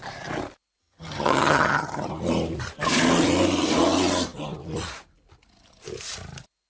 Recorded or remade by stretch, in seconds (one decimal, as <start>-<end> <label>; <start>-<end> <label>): 0.0-0.8 recorded; 0.8-2.1 remade; 2.1-6.7 recorded